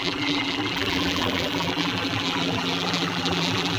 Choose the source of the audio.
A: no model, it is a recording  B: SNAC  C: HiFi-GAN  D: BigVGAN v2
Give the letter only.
D